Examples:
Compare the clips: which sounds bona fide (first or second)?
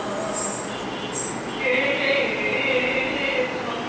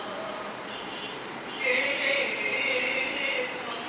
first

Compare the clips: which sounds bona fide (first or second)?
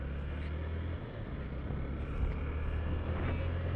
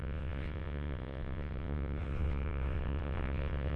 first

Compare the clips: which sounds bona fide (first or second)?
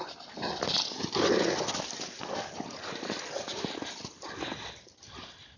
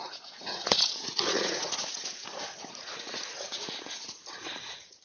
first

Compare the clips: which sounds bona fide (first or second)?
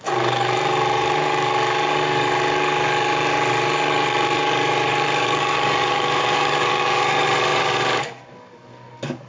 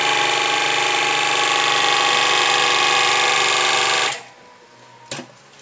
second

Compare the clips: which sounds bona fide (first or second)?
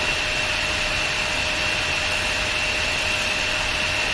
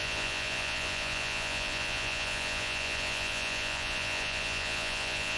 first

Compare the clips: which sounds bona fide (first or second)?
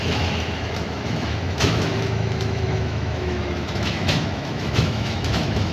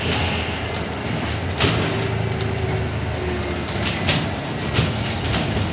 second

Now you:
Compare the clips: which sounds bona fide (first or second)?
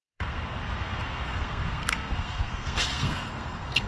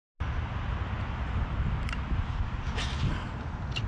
second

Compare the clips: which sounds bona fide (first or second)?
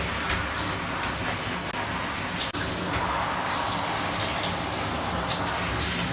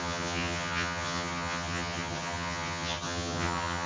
first